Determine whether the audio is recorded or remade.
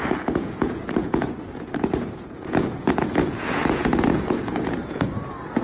remade